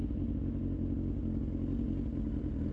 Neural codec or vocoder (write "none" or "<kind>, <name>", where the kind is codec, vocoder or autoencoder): none